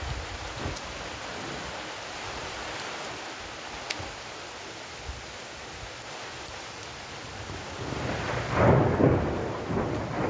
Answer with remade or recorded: recorded